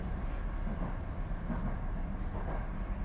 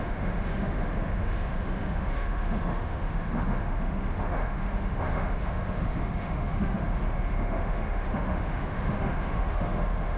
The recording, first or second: first